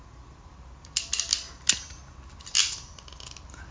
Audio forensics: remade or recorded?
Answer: recorded